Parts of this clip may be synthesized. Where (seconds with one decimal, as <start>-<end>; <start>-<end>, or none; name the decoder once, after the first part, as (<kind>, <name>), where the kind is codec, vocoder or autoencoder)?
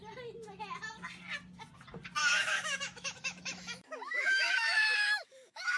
2.2-5.8 (autoencoder, DAC-VAE)